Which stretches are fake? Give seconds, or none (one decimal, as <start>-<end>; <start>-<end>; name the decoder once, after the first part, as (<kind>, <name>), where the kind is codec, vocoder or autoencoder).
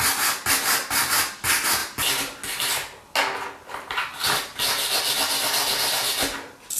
none